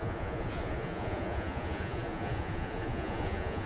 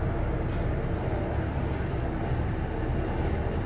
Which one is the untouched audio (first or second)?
second